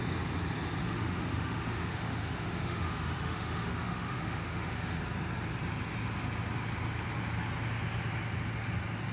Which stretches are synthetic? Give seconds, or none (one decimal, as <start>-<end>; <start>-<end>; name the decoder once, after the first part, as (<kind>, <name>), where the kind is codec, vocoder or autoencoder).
0.8-5.0 (autoencoder, DAC-VAE)